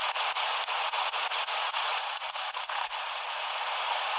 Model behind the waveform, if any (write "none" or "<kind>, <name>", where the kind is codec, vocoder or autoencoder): vocoder, Vocos